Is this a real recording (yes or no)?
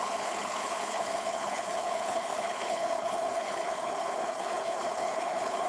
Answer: no